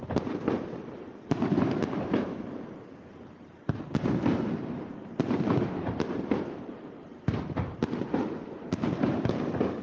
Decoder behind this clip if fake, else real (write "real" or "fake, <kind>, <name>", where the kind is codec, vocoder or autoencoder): fake, vocoder, BigVGAN v2